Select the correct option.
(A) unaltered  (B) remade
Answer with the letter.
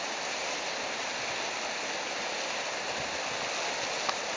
A